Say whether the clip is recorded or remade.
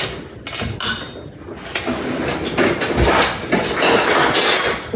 recorded